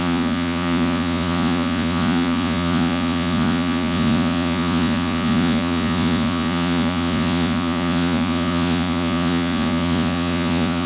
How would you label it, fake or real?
fake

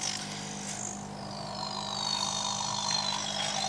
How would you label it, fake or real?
real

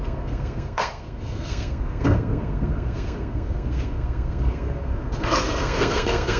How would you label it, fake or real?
fake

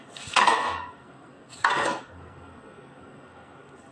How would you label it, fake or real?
fake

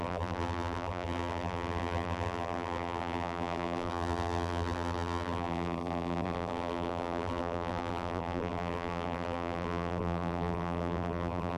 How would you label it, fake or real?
fake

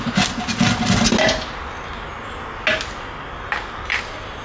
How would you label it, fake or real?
real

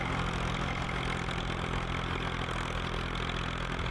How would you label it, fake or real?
real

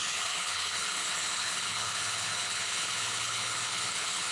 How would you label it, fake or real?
fake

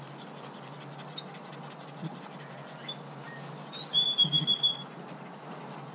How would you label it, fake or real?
real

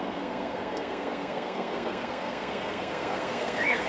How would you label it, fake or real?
fake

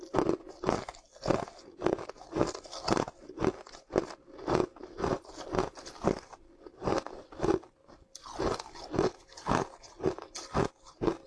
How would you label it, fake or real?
real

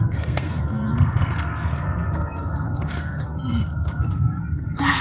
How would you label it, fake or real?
fake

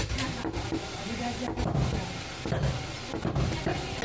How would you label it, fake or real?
real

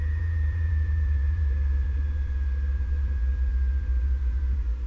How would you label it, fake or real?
fake